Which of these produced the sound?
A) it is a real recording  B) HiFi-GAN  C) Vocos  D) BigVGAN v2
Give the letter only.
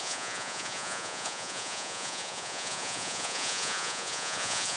C